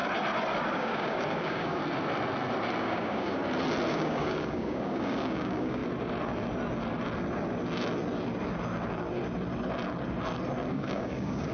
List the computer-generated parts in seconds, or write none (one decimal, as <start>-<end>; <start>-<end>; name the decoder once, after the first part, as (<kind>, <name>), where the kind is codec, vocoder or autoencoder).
0.7-1.8 (codec, DAC); 2.8-3.4; 3.9-5.8; 10.7-11.5